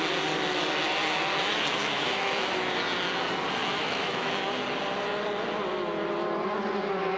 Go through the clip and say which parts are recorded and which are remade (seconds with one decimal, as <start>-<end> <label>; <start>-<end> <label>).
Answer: 0.0-1.8 recorded; 1.8-2.5 remade; 2.5-3.6 recorded; 3.6-4.3 remade; 4.3-7.2 recorded